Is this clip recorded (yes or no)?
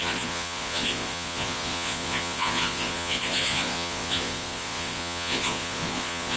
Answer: no